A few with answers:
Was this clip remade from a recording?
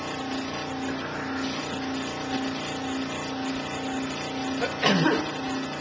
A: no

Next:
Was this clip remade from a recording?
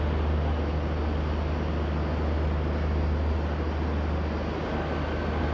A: no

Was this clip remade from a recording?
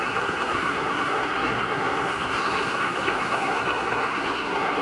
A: yes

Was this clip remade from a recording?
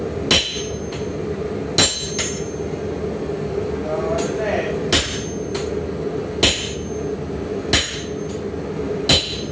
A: no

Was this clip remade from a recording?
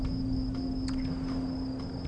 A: no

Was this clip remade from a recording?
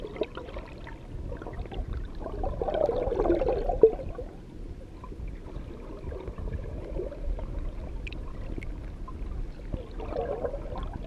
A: no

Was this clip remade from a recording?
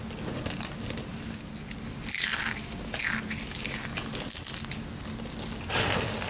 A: no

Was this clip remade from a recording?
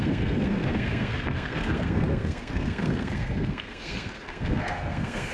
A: yes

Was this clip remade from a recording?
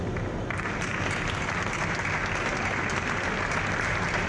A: no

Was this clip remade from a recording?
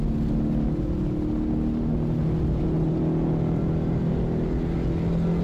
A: no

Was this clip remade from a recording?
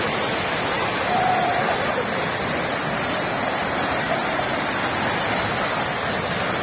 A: no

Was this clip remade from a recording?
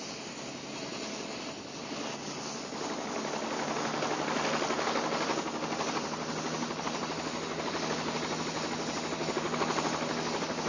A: no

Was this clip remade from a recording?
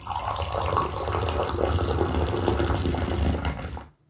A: no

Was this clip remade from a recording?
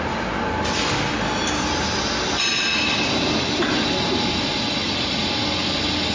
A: no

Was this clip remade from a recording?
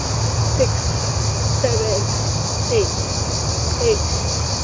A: no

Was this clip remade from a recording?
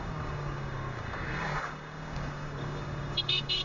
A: yes